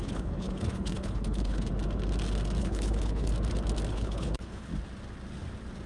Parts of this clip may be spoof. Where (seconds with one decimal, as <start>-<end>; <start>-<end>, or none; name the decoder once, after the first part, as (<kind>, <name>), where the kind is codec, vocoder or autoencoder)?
0.0-1.7 (codec, HILCodec); 2.6-3.3; 3.9-4.7